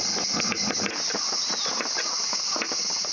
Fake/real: real